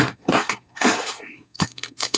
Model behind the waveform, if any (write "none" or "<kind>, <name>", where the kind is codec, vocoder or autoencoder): codec, SNAC